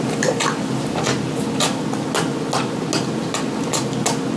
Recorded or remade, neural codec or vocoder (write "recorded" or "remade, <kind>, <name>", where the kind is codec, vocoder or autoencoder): recorded